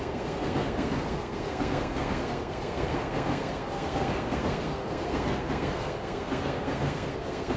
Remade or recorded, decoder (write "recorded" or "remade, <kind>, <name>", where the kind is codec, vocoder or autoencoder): remade, codec, SNAC